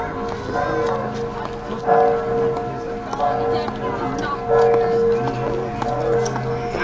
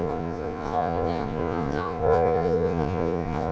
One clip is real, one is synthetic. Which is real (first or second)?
first